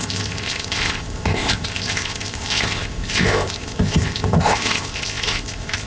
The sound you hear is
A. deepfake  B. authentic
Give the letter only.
A